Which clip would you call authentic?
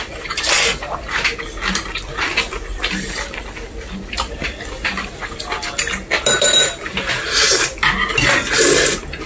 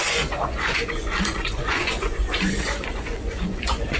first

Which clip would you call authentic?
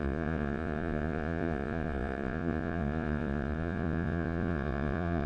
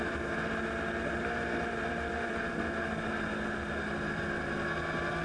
second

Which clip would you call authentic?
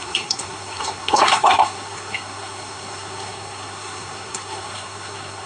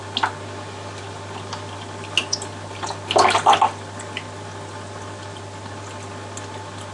second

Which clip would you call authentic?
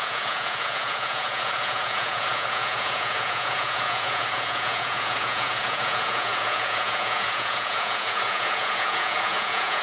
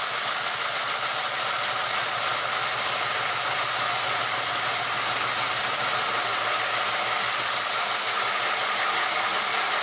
second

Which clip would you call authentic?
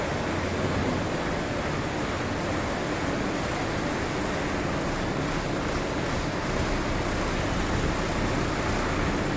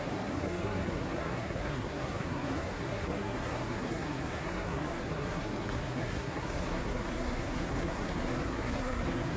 first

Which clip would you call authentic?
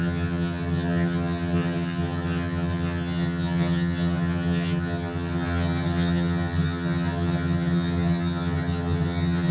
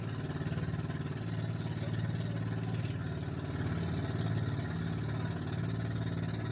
second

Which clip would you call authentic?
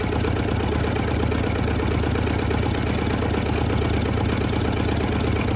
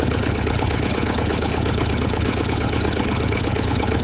first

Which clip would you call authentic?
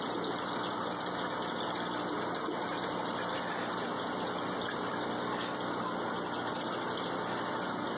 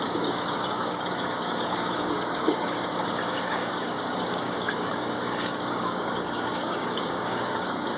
first